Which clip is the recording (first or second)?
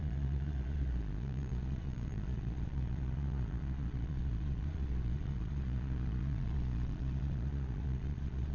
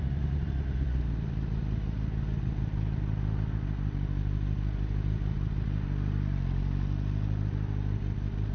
second